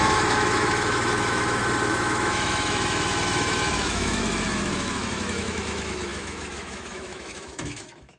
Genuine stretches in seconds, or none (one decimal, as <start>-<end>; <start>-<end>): none